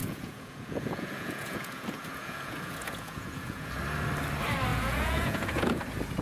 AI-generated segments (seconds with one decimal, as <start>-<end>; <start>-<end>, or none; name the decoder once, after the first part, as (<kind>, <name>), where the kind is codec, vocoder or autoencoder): 0.0-3.7 (vocoder, Vocos); 4.7-5.8